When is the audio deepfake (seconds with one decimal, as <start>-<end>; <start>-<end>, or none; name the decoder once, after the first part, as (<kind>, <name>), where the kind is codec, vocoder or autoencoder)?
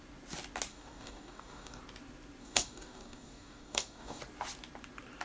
0.7-1.8 (codec, DAC); 2.4-4.2